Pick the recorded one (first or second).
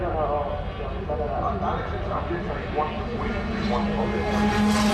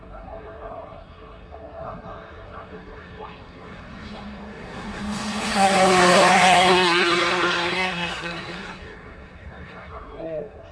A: first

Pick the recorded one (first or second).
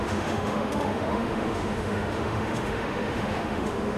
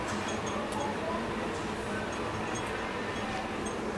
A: second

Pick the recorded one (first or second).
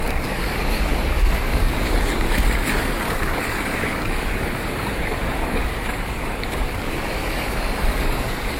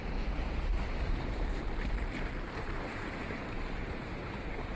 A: second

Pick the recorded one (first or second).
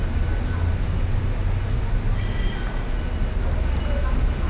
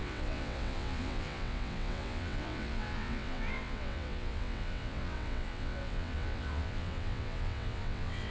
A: first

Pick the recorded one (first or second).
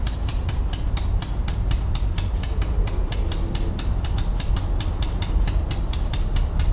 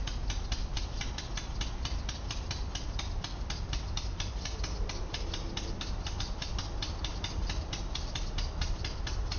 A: first